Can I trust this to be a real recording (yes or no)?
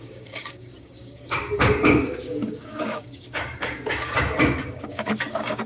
no